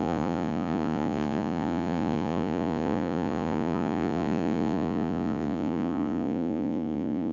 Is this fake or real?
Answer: fake